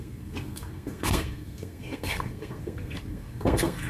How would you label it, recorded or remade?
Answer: remade